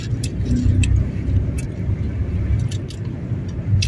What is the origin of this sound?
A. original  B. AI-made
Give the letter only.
A